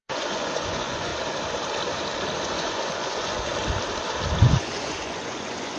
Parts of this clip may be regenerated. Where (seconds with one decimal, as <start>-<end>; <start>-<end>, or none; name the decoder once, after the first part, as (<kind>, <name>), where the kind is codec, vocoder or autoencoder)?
0.0-1.1 (vocoder, Vocos); 2.4-3.5; 4.4-5.8